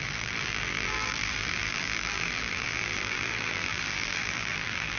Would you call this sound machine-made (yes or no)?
yes